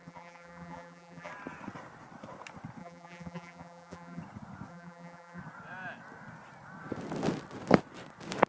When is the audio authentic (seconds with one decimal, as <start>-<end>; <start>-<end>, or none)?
1.3-2.8; 4.2-4.7; 5.4-8.5